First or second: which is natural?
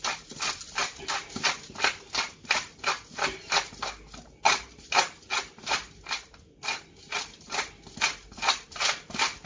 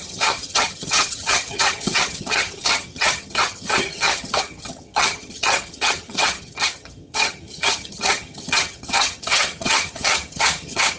first